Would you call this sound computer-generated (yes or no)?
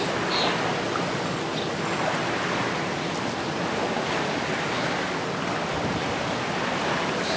no